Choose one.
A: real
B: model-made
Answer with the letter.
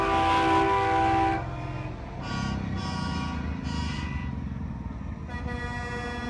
A